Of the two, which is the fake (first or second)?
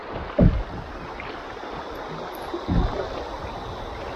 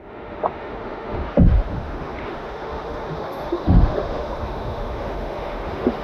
second